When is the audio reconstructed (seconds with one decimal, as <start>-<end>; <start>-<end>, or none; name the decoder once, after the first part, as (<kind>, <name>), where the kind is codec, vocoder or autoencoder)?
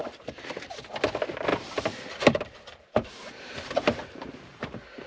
0.0-0.7 (vocoder, BigVGAN v2); 1.5-4.6